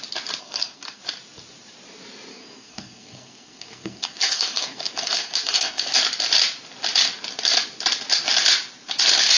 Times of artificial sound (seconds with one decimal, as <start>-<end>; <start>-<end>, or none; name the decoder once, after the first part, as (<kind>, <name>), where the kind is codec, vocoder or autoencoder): 0.4-1.0 (codec, SNAC); 2.3-6.0

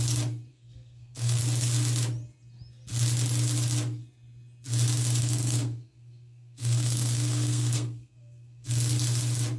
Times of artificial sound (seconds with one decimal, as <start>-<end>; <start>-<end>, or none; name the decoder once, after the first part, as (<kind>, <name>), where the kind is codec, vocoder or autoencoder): 0.5-1.4 (codec, SNAC); 5.2-8.7